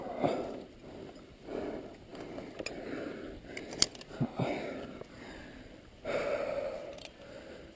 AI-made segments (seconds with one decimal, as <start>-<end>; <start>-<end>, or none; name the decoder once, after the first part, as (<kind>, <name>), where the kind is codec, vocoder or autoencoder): none